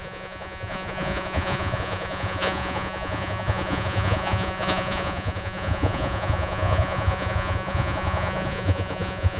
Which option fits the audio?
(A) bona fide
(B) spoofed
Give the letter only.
B